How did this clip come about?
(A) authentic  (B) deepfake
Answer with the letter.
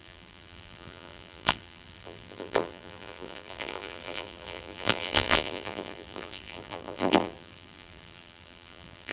B